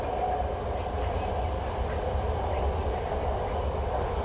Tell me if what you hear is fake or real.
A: real